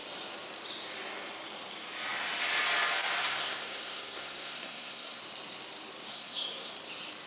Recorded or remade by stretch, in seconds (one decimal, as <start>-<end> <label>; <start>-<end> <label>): 0.0-3.2 recorded; 3.2-5.2 remade; 5.2-6.1 recorded; 6.1-6.7 remade; 6.7-7.3 recorded